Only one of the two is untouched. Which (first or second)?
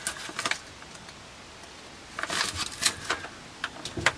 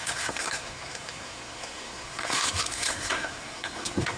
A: first